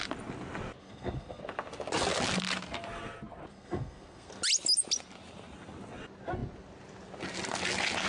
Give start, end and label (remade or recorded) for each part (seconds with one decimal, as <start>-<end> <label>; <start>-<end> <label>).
0.0-0.8 recorded; 0.8-1.4 remade; 1.4-3.5 recorded; 3.5-4.3 remade; 4.3-8.1 recorded